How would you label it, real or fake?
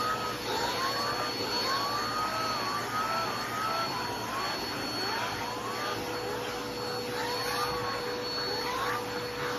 real